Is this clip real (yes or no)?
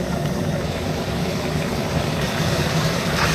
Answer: no